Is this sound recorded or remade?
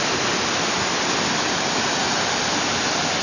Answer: recorded